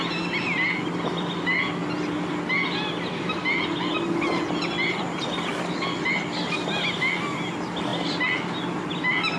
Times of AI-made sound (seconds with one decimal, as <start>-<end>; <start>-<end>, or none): none